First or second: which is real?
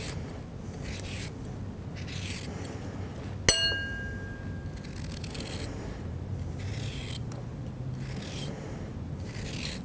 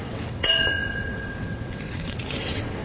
first